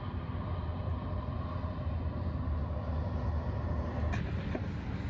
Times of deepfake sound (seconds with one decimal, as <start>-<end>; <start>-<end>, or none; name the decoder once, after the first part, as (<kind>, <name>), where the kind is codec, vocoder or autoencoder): none